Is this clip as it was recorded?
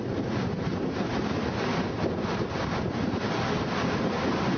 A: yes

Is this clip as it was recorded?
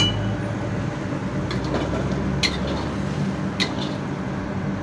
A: yes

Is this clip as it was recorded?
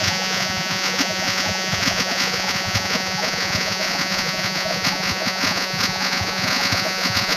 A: no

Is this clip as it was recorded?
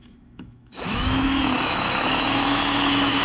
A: no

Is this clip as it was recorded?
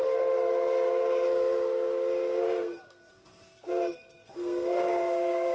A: no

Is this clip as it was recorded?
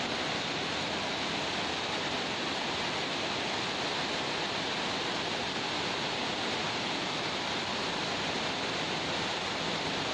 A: yes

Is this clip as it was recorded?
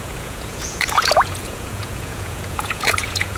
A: no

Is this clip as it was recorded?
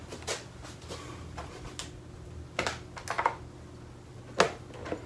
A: yes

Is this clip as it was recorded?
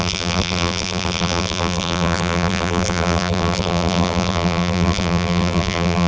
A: no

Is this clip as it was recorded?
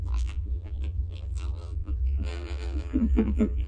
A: no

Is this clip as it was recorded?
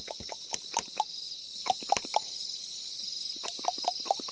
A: yes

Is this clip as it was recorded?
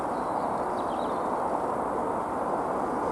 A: yes